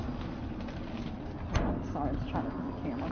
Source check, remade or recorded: remade